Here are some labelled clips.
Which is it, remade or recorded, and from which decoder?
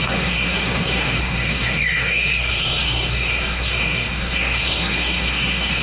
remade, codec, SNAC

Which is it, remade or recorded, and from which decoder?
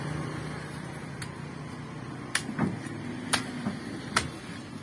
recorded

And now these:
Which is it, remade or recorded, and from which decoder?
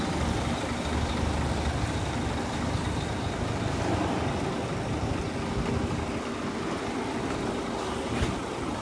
recorded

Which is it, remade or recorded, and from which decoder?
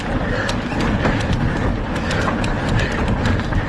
recorded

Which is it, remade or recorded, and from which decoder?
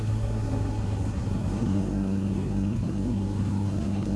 remade, codec, SNAC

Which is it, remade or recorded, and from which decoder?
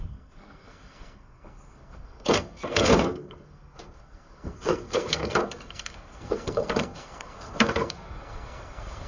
remade, codec, SNAC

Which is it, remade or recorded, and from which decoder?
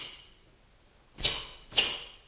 recorded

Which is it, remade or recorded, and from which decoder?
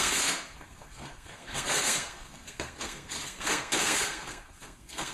remade, codec, SNAC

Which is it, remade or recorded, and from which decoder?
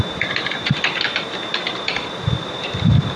recorded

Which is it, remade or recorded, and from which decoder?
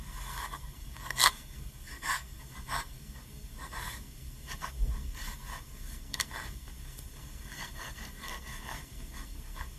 remade, codec, SNAC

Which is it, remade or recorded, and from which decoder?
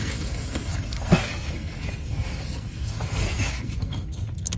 remade, codec, SNAC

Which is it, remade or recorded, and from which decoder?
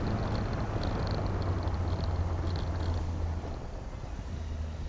recorded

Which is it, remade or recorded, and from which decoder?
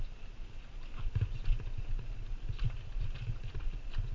recorded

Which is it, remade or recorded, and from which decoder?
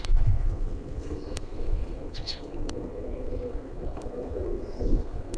remade, codec, SNAC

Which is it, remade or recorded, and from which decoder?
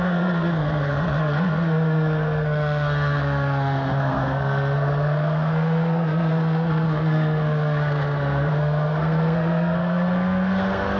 remade, codec, SNAC